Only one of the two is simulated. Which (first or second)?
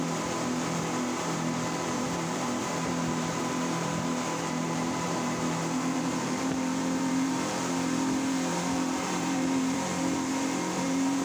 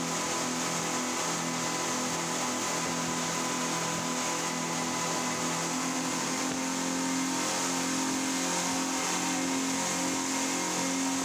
first